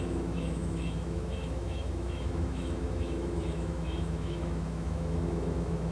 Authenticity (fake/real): fake